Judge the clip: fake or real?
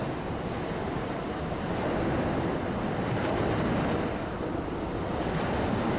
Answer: real